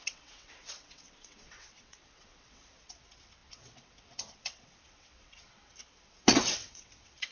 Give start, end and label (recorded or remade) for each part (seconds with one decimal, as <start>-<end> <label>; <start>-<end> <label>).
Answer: 0.0-7.3 remade